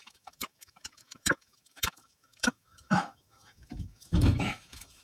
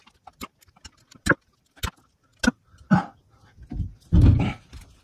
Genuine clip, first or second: second